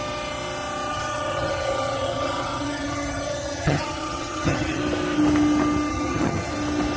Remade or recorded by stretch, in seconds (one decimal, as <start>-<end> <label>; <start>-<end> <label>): 0.0-0.9 recorded; 0.9-4.8 remade; 4.8-5.9 recorded; 5.9-6.5 remade; 6.5-7.0 recorded